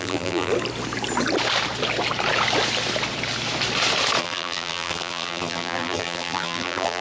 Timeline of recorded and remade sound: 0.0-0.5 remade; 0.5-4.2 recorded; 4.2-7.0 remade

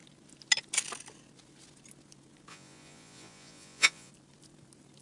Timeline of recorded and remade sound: 0.0-2.5 recorded; 2.5-4.1 remade; 4.1-5.0 recorded

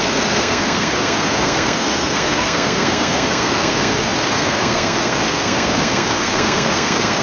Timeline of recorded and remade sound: 0.0-7.2 remade

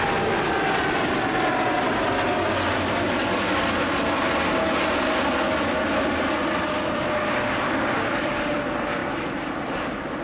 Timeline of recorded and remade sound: 0.0-10.2 recorded